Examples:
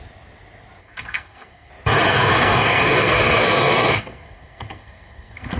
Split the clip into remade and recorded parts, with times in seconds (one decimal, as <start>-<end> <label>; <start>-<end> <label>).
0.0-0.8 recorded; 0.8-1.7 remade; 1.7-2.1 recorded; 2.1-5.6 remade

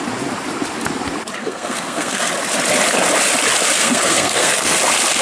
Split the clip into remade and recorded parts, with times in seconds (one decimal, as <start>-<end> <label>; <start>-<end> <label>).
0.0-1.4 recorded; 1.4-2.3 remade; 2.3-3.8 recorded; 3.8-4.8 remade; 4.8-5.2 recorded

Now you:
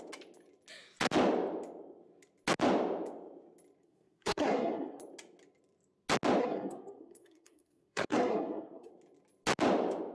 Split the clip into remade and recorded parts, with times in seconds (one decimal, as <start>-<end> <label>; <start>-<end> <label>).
0.0-3.8 recorded; 3.8-5.0 remade; 5.0-6.4 recorded; 6.4-8.9 remade; 8.9-10.1 recorded